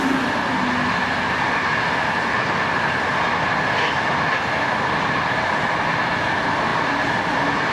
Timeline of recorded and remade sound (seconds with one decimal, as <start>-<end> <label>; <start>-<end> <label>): 0.0-7.7 recorded